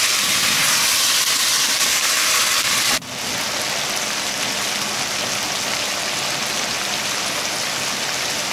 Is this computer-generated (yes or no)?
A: no